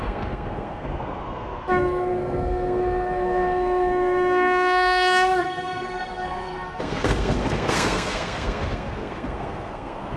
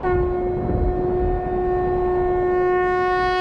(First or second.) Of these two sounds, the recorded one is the second